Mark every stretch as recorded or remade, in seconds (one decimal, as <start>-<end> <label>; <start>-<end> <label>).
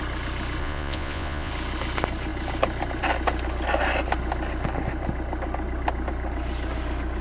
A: 0.0-0.6 recorded; 0.6-1.5 remade; 1.5-7.2 recorded